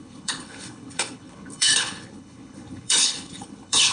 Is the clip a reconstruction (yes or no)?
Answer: yes